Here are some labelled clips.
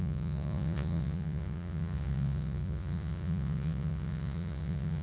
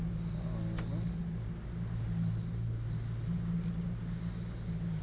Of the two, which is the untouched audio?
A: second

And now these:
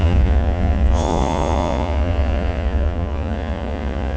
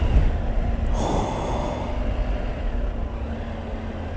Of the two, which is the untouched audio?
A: second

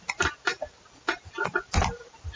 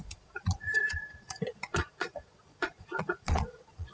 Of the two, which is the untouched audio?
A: first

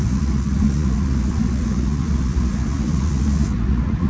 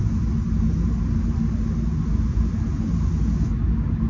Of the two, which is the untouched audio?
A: second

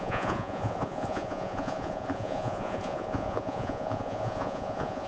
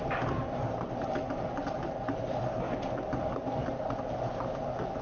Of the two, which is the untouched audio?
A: second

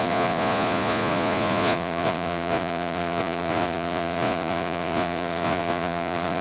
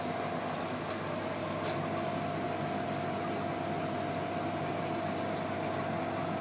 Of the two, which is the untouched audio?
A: second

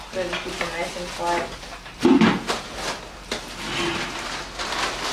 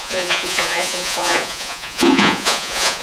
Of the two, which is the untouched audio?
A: first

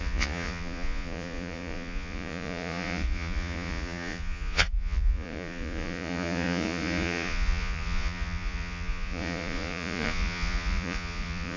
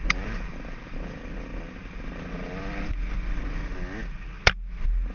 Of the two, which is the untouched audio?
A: second